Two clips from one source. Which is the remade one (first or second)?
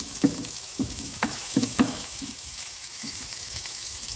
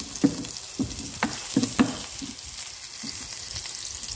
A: first